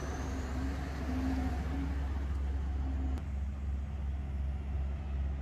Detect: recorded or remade recorded